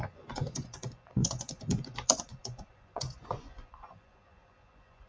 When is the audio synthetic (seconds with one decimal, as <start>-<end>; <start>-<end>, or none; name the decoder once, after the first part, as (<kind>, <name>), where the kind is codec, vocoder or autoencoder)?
0.0-5.1 (vocoder, Vocos)